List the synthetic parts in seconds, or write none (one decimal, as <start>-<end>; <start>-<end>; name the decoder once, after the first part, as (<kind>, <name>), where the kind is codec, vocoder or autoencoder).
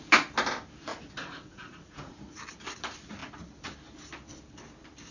0.9-2.4 (vocoder, Vocos)